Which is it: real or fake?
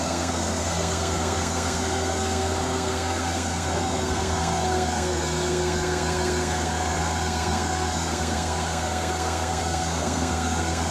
fake